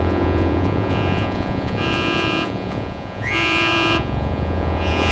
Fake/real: fake